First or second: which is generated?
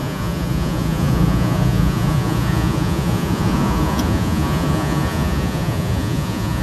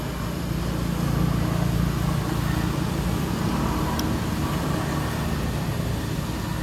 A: first